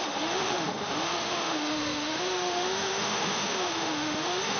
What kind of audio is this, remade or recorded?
remade